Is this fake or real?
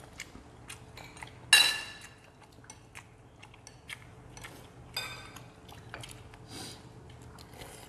real